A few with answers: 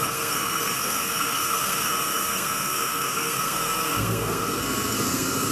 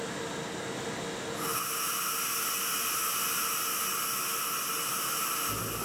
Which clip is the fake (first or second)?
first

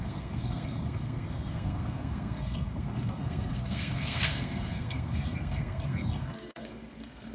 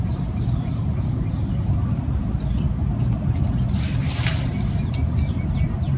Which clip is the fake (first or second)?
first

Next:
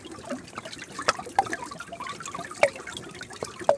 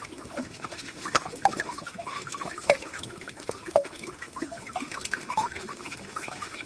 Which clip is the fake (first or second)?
second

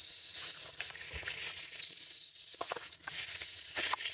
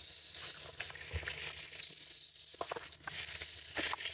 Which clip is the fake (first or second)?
first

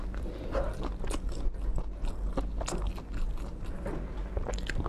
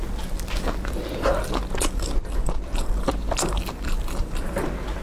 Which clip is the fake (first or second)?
second